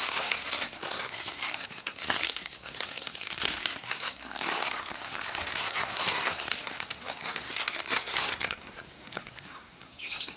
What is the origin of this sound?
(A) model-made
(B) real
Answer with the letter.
A